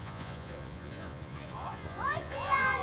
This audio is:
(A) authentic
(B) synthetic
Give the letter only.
B